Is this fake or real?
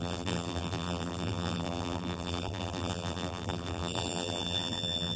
fake